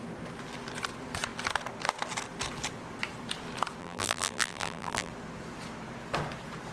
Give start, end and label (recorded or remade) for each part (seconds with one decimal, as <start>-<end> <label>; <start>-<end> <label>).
0.0-3.8 recorded; 3.8-5.1 remade; 5.1-6.7 recorded